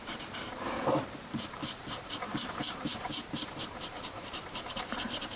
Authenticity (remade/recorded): remade